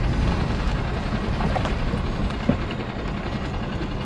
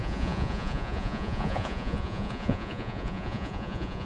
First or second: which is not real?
second